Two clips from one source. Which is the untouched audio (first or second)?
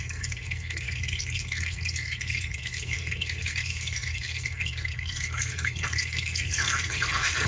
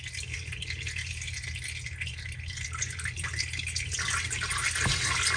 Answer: second